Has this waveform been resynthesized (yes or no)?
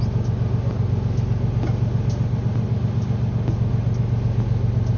no